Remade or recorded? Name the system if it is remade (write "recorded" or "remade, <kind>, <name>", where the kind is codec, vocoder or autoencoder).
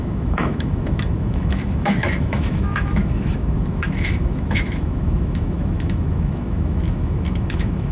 remade, autoencoder, DAC-VAE